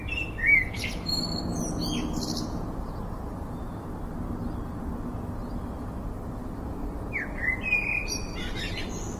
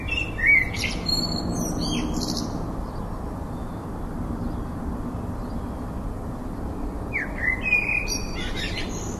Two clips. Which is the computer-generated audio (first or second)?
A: second